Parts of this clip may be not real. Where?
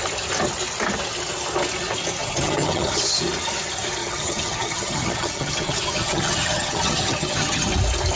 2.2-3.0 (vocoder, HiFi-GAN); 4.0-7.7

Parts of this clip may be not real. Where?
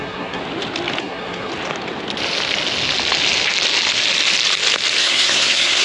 0.0-0.4 (codec, SNAC); 1.0-1.5; 5.0-5.8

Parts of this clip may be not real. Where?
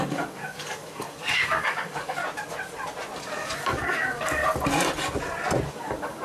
0.0-2.2 (codec, DAC); 3.2-4.4; 5.7-6.2